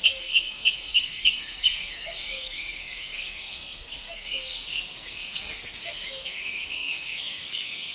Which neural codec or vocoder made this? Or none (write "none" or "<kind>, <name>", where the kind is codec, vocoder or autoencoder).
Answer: codec, SNAC